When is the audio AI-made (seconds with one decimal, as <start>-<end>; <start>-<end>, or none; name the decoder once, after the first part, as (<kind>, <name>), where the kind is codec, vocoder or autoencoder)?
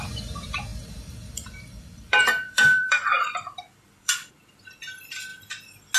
0.7-4.3 (vocoder, BigVGAN v2)